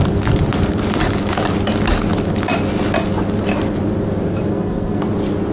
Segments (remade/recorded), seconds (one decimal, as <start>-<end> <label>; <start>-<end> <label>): 0.0-4.5 recorded; 4.5-5.0 remade; 5.0-5.5 recorded